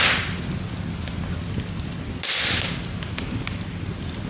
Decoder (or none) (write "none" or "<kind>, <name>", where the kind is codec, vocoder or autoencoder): none